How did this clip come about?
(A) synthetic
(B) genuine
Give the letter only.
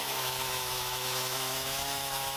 A